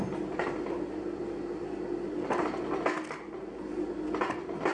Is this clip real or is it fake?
real